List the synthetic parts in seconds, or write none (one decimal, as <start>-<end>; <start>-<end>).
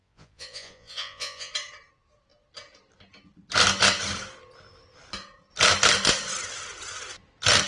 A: 0.0-1.5